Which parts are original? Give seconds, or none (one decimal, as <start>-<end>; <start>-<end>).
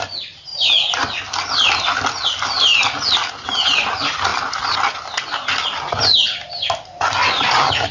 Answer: 0.0-7.9